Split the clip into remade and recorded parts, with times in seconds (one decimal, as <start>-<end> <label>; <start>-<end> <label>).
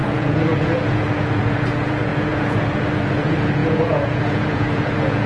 0.0-5.3 remade